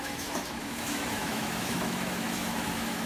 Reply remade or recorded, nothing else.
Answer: remade